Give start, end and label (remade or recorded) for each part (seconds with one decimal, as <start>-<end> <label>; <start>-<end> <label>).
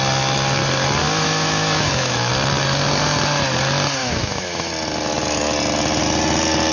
0.0-1.0 recorded; 1.0-2.3 remade; 2.3-4.0 recorded; 4.0-4.7 remade; 4.7-6.7 recorded